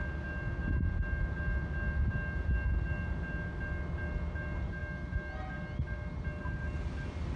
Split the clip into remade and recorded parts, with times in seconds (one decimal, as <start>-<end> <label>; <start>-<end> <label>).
0.0-7.4 recorded